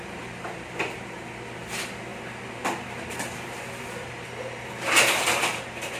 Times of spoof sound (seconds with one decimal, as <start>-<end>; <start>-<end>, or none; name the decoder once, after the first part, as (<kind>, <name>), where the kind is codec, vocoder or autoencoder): none